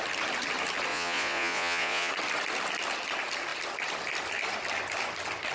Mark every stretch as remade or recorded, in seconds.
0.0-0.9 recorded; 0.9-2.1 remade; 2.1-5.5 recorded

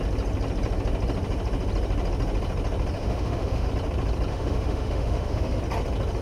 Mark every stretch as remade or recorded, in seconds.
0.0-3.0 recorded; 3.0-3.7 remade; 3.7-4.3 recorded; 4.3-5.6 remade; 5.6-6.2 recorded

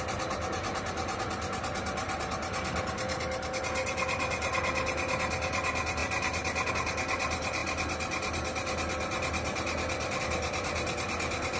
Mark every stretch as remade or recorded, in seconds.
0.0-11.6 recorded

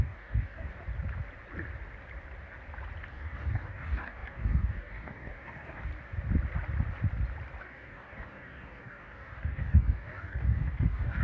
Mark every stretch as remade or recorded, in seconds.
0.0-0.7 remade; 0.7-3.1 recorded; 3.1-5.9 remade; 5.9-7.6 recorded; 7.6-11.2 remade

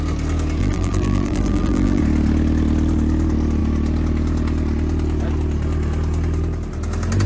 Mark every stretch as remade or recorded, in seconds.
0.0-0.6 recorded; 0.6-2.0 remade; 2.0-7.3 recorded

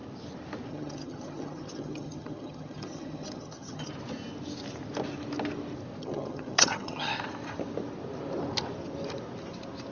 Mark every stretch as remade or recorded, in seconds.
0.0-0.7 recorded; 0.7-3.9 remade; 3.9-6.0 recorded; 6.0-7.1 remade; 7.1-9.9 recorded

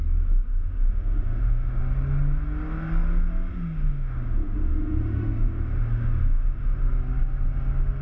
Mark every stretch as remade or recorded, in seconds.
0.0-0.5 recorded; 0.5-1.8 remade; 1.8-3.5 recorded; 3.5-6.8 remade; 6.8-8.0 recorded

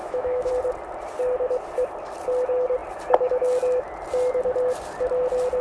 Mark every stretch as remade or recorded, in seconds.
0.0-0.5 remade; 0.5-5.6 recorded